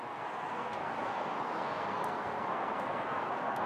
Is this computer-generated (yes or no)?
yes